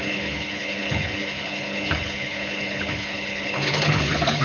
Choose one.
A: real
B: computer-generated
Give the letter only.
B